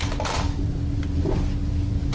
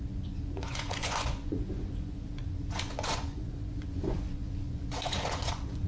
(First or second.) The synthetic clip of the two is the second